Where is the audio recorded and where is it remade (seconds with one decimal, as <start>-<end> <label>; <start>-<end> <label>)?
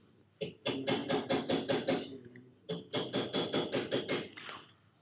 0.0-5.0 recorded